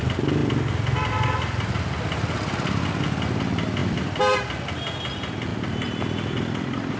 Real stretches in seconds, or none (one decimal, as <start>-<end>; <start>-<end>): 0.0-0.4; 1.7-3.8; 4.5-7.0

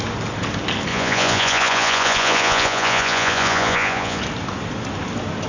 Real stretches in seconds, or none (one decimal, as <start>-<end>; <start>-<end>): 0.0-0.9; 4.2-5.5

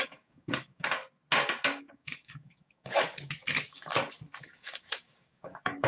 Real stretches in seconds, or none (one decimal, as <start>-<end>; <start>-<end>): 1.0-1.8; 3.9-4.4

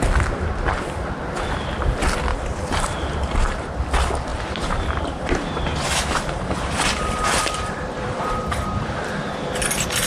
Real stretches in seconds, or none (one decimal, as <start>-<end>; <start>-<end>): 0.0-2.3; 3.8-4.3; 9.3-10.1

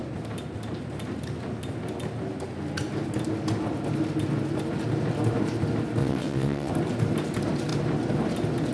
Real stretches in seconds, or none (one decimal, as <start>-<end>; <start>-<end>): 0.0-6.0; 6.7-8.7

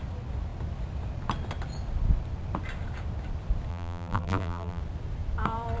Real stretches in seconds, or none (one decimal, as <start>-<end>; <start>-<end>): 0.0-3.7; 4.8-5.8

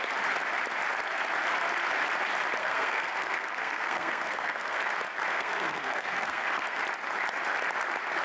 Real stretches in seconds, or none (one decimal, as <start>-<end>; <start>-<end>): 0.0-2.6; 4.8-5.3; 6.8-8.2